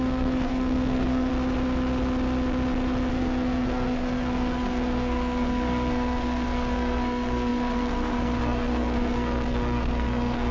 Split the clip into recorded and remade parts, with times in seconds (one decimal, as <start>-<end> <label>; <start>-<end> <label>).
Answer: 0.0-1.3 remade; 1.3-3.1 recorded; 3.1-10.5 remade